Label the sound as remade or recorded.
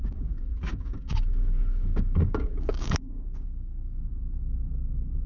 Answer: remade